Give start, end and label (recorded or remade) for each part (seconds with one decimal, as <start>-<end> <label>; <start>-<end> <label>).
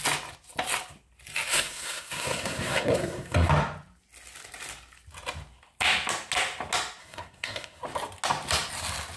0.0-1.5 recorded; 1.5-3.5 remade; 3.5-7.0 recorded; 7.0-7.8 remade; 7.8-9.2 recorded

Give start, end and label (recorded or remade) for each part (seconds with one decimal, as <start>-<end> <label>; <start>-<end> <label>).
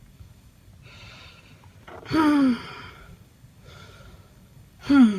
0.0-0.7 remade; 0.7-2.9 recorded; 2.9-5.2 remade